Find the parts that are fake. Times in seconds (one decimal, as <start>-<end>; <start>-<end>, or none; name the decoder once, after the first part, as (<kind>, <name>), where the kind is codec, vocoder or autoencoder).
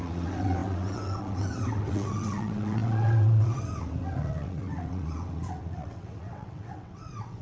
0.0-7.4 (vocoder, WaveNeXt)